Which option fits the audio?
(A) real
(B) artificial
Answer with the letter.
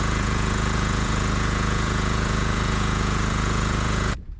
B